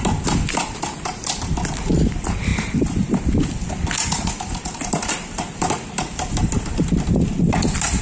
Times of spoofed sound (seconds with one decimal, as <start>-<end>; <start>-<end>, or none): none